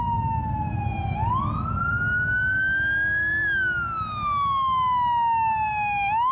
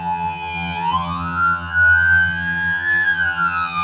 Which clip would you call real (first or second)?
first